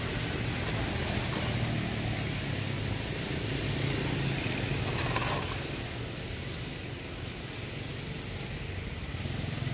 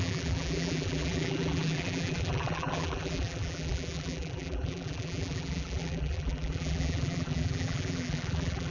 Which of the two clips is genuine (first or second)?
first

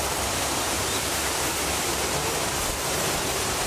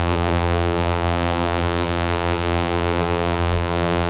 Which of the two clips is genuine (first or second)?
first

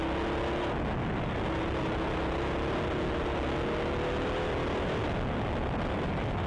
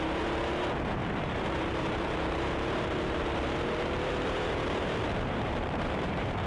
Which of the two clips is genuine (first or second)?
first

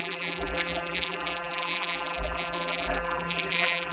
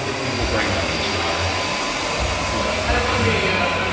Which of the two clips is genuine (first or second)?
second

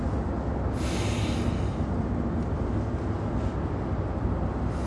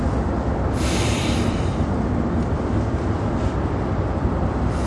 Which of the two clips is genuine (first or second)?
first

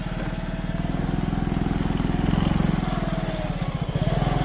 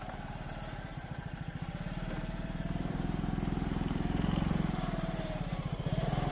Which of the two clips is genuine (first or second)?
first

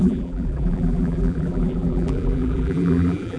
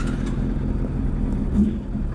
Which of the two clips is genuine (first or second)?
second